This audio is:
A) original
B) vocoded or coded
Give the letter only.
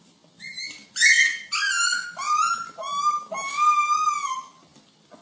A